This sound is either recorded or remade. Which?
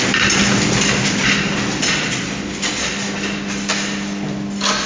recorded